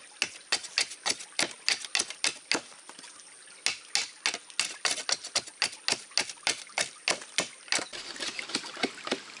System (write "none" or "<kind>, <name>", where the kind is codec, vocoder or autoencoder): none